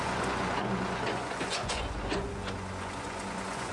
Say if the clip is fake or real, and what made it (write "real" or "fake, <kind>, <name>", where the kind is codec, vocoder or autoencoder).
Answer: fake, vocoder, Vocos